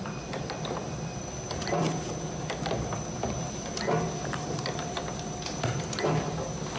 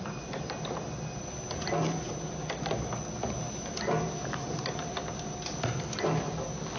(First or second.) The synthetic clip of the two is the first